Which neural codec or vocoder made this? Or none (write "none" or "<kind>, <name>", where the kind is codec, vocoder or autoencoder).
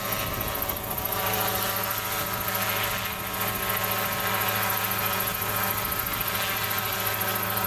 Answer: none